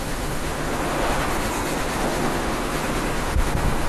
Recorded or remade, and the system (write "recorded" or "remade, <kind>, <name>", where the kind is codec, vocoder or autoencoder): remade, autoencoder, DAC-VAE